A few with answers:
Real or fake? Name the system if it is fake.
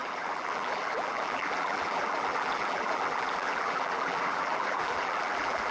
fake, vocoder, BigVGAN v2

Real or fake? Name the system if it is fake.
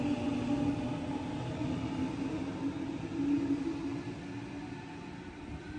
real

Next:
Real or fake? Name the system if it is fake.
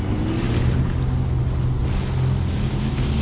real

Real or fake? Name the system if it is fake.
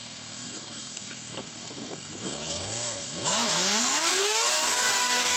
fake, codec, DAC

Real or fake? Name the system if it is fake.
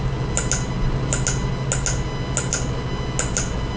real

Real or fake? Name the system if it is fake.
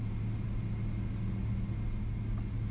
real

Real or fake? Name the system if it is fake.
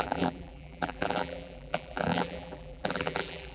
fake, vocoder, BigVGAN v2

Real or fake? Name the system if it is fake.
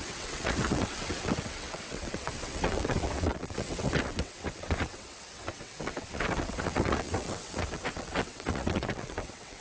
fake, vocoder, WaveNeXt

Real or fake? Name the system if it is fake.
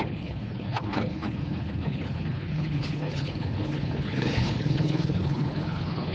fake, codec, HILCodec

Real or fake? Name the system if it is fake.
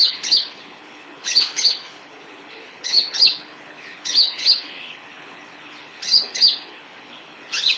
fake, codec, HILCodec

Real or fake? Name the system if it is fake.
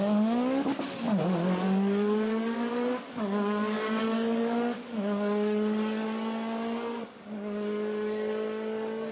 fake, codec, DAC